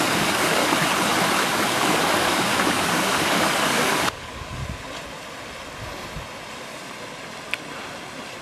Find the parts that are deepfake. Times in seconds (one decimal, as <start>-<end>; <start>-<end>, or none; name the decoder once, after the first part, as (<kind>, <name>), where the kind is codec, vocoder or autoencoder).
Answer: 0.0-0.6 (codec, DAC); 1.4-4.6